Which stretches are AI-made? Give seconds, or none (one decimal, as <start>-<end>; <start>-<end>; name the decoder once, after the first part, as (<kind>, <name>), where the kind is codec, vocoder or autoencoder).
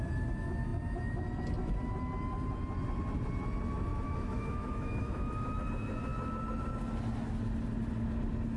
3.9-5.6 (autoencoder, DAC-VAE)